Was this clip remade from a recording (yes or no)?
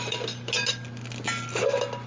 no